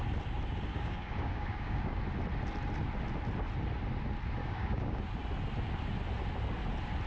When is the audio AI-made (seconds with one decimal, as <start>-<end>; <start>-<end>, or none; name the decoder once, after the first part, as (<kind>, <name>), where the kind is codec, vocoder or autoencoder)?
0.7-2.0 (codec, DAC); 4.4-5.0